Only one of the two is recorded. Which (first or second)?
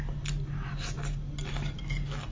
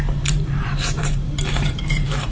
first